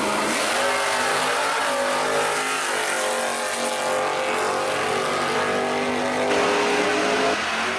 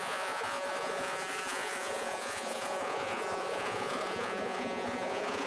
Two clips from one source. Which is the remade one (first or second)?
second